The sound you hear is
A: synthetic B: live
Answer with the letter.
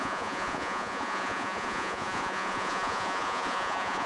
A